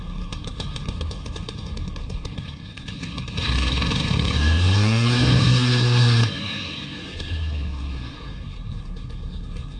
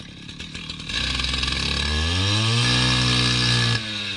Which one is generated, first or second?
first